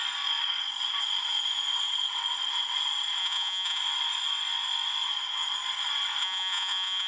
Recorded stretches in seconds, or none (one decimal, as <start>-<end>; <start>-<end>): 0.0-3.2; 3.8-6.2